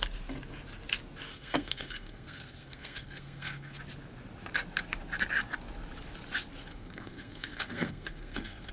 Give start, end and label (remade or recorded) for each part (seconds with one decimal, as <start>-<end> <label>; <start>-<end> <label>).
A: 0.0-1.3 recorded; 1.3-3.8 remade; 3.8-6.7 recorded; 6.7-8.7 remade